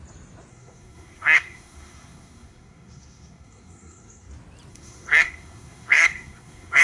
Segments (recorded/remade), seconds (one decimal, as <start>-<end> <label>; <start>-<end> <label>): 0.0-0.5 recorded; 0.5-4.3 remade; 4.3-4.7 recorded; 4.7-6.8 remade